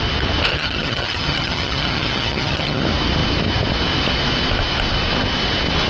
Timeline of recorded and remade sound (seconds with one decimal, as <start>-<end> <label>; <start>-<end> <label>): 0.0-0.5 recorded; 0.5-2.8 remade; 2.8-5.9 recorded